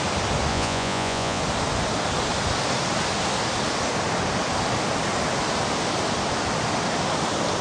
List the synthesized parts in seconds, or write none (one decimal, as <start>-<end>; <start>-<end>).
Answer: 0.5-1.4